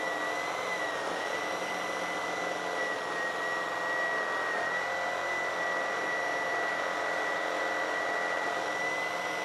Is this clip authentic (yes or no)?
yes